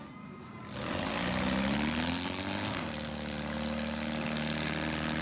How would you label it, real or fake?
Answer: real